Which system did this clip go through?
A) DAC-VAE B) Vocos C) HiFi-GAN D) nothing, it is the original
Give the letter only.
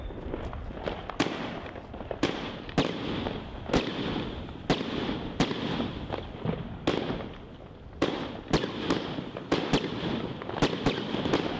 D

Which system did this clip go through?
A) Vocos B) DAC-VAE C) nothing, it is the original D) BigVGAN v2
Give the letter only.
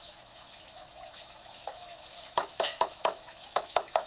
B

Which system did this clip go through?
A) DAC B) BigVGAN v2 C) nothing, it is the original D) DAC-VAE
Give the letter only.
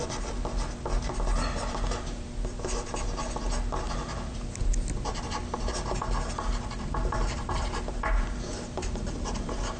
C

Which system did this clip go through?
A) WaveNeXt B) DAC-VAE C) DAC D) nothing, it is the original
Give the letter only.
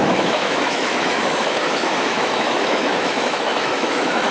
B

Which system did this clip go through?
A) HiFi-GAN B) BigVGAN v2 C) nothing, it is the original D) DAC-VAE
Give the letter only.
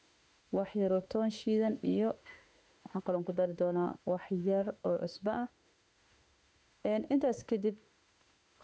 D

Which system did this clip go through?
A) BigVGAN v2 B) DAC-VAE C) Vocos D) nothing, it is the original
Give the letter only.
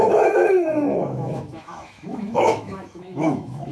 B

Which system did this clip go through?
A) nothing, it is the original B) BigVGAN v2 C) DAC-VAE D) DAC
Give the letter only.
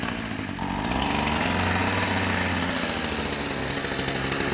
A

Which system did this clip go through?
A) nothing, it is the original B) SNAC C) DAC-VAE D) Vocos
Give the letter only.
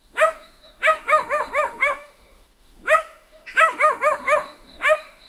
C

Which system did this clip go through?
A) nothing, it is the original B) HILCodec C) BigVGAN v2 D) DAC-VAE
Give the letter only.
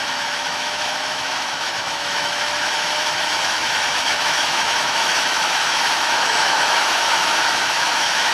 D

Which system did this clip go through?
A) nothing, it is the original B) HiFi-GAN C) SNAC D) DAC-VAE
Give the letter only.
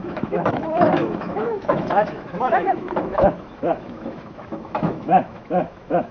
D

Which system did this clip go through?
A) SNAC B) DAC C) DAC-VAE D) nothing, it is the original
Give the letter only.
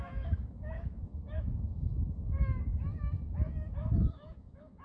C